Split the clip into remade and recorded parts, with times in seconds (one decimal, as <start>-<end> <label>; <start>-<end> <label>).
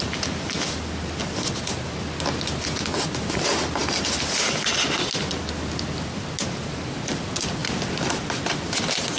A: 0.0-9.2 recorded